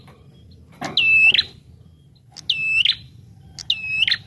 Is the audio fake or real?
real